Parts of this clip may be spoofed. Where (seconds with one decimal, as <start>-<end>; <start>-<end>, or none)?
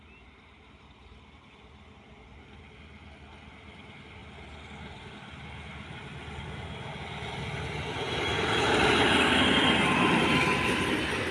none